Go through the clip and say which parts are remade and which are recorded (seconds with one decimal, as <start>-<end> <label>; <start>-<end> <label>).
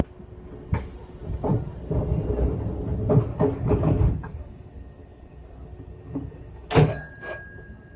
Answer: 0.0-3.3 recorded; 3.3-7.1 remade; 7.1-8.0 recorded